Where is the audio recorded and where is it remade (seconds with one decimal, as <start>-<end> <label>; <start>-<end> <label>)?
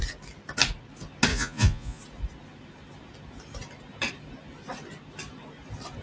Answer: 0.0-1.3 recorded; 1.3-2.0 remade; 2.0-6.0 recorded